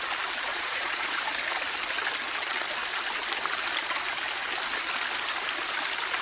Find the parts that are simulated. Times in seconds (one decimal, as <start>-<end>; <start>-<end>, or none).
0.5-1.2